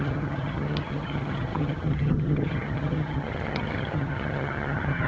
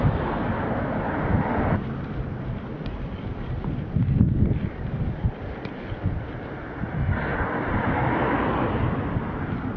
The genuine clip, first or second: second